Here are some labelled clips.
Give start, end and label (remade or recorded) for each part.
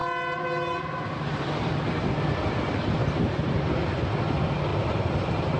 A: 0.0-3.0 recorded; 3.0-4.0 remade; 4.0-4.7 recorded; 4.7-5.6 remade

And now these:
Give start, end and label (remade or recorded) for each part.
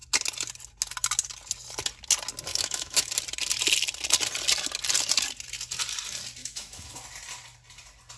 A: 0.0-2.5 recorded; 2.5-3.1 remade; 3.1-6.4 recorded; 6.4-7.0 remade; 7.0-8.2 recorded